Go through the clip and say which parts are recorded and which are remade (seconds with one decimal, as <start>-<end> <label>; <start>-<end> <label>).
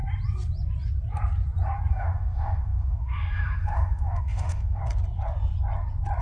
0.0-1.9 recorded; 1.9-4.8 remade; 4.8-6.2 recorded